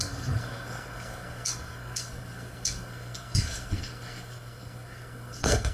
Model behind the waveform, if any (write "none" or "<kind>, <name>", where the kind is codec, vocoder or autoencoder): codec, SNAC